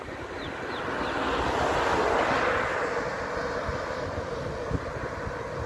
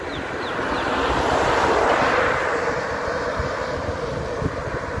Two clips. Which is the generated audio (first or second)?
second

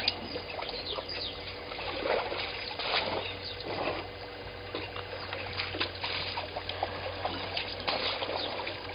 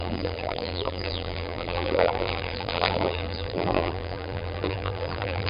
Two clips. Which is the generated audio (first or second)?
second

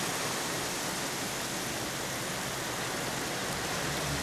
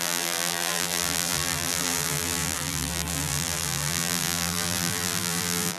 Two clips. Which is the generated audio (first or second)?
second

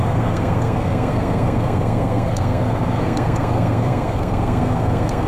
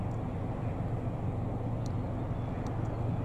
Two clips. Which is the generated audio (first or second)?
first